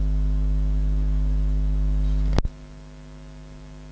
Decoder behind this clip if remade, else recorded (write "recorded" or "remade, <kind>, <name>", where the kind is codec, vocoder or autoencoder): recorded